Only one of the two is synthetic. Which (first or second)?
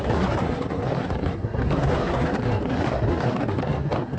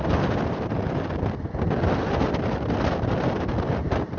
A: first